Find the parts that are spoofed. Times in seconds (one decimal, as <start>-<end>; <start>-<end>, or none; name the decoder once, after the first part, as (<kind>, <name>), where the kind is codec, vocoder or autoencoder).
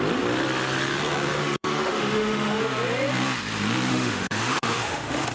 1.4-2.6 (autoencoder, DAC-VAE); 3.9-5.3